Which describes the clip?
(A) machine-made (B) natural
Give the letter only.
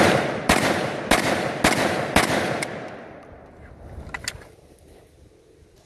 B